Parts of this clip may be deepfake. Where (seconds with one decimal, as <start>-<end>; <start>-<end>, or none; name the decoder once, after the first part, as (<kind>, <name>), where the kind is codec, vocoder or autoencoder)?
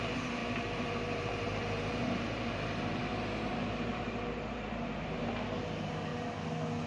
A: 0.0-6.1 (vocoder, BigVGAN v2)